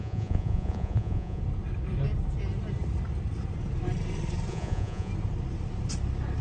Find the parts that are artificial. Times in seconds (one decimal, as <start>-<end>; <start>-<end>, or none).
0.0-1.4; 4.5-5.1